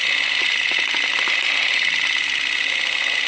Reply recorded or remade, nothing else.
recorded